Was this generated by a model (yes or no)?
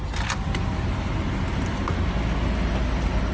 no